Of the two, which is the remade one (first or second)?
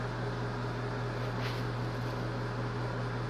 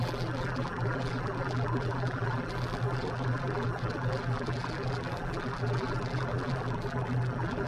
second